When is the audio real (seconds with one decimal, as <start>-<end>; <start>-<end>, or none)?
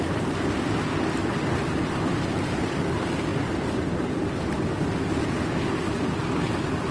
0.0-6.9